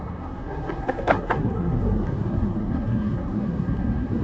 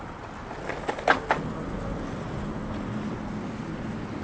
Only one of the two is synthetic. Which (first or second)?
first